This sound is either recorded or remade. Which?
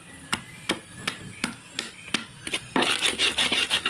recorded